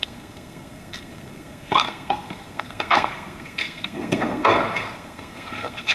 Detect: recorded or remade remade